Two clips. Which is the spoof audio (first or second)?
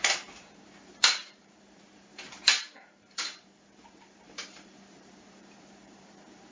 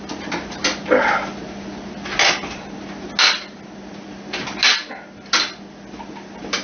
first